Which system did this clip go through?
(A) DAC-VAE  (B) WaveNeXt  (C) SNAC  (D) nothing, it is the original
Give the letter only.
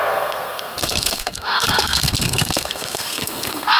C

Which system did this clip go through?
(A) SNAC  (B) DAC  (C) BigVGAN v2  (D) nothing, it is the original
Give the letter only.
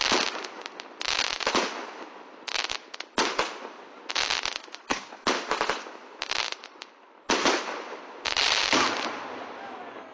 D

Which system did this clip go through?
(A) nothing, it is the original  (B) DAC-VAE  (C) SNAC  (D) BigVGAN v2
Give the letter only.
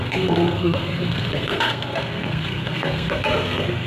C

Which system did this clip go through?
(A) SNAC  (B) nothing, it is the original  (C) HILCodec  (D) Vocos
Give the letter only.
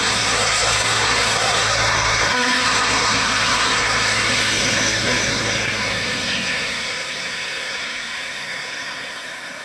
A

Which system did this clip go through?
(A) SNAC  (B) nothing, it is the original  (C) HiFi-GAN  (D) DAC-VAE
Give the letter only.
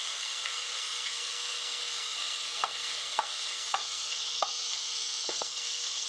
A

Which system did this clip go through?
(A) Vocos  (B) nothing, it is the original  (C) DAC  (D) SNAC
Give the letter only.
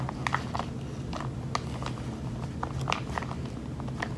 B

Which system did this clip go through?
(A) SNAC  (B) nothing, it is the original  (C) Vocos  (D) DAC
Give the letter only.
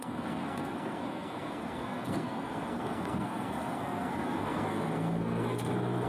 A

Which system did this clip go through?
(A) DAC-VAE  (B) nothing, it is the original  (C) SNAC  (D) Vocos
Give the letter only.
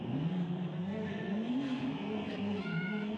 C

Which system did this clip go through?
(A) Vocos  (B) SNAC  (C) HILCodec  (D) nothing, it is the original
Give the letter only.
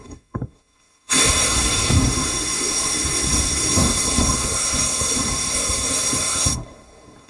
B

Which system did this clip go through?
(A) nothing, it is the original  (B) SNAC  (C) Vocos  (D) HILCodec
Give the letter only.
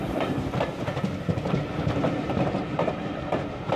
A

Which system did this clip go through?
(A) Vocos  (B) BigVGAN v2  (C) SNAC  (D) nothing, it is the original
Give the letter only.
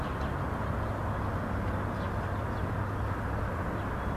D